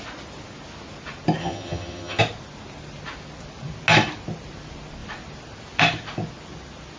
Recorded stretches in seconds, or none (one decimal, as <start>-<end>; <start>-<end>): 0.0-1.4; 2.2-7.0